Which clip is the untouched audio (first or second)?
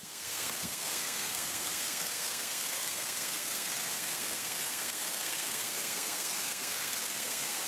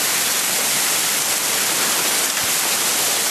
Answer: second